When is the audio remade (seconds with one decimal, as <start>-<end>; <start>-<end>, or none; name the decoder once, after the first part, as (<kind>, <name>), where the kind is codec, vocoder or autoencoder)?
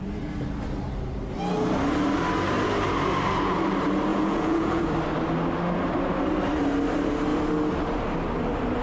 4.1-4.8 (vocoder, Vocos)